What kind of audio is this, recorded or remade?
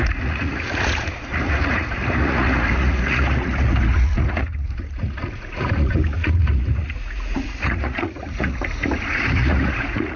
remade